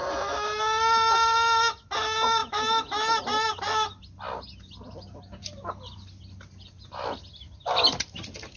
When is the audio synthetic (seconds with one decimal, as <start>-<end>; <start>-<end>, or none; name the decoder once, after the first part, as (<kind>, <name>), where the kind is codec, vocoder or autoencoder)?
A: none